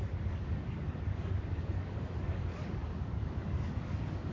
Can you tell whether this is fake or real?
fake